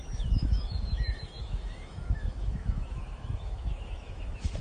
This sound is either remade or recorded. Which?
remade